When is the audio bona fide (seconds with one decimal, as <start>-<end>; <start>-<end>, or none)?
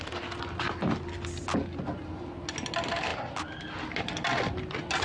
0.0-5.0